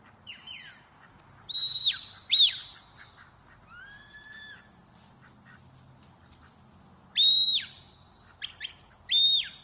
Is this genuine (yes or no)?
yes